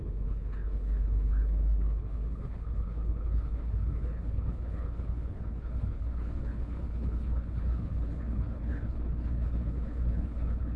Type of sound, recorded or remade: remade